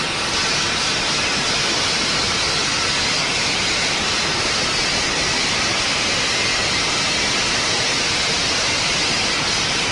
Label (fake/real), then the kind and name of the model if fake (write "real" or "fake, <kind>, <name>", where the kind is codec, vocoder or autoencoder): real